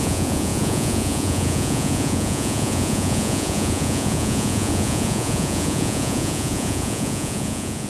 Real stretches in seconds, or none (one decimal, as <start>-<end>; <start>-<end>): none